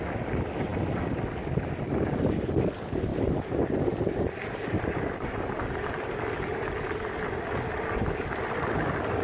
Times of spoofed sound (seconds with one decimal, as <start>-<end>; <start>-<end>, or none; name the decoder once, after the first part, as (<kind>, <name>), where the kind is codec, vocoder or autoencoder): none